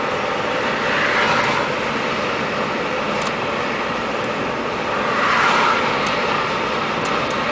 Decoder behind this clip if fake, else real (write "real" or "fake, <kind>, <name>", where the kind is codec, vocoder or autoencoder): real